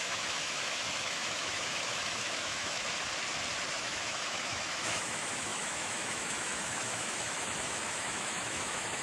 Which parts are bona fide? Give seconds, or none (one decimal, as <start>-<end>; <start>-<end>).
2.8-3.7